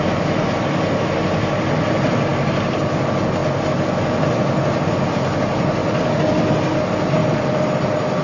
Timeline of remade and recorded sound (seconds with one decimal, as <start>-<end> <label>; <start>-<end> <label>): 0.0-8.2 recorded

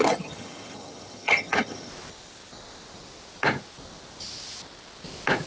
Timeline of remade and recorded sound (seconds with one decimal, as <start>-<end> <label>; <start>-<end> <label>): 0.0-1.9 remade; 1.9-5.5 recorded

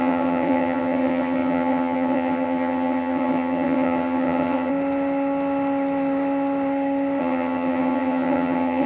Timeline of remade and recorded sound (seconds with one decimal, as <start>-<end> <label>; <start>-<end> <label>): 0.0-4.7 remade; 4.7-7.2 recorded; 7.2-8.9 remade

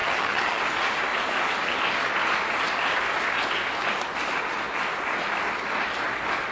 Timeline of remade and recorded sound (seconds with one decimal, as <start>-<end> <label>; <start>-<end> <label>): 0.0-0.6 remade; 0.6-6.5 recorded